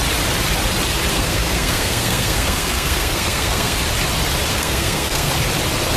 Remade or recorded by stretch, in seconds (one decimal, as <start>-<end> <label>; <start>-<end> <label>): 0.0-1.1 recorded; 1.1-3.8 remade; 3.8-4.5 recorded; 4.5-5.3 remade; 5.3-6.0 recorded